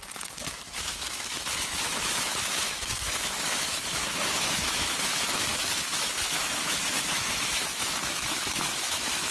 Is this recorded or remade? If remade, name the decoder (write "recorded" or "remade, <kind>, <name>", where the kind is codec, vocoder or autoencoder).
remade, autoencoder, DAC-VAE